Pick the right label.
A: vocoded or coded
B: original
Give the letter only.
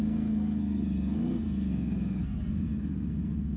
A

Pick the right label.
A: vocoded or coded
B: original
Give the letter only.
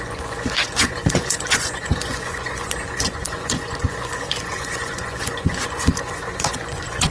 A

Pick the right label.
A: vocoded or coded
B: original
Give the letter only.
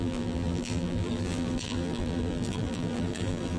A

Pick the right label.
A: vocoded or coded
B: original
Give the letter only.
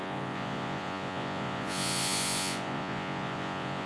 A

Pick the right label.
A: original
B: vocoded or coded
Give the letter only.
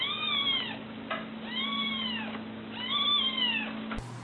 A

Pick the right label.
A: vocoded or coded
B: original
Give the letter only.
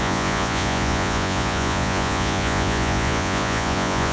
A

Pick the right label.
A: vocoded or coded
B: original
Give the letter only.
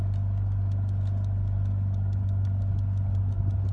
B